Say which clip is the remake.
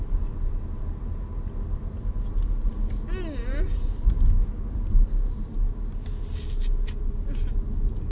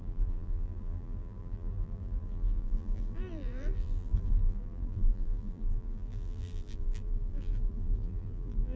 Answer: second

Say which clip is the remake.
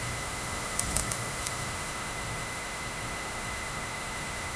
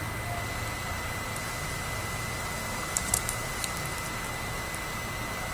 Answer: first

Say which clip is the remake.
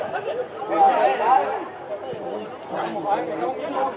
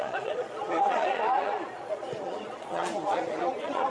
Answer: second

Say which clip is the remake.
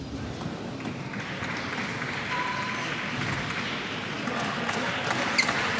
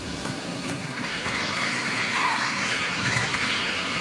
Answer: second